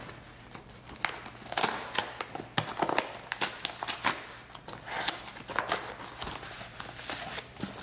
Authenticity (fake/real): real